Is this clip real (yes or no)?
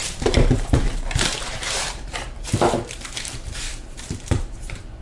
no